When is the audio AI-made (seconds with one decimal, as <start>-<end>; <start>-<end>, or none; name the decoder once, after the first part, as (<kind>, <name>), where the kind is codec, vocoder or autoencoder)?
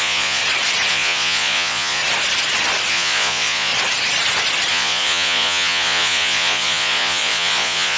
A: 0.0-0.4 (vocoder, Vocos); 0.9-2.0; 2.9-3.7; 4.7-8.0